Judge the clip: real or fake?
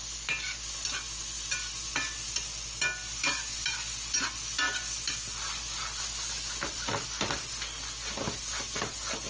real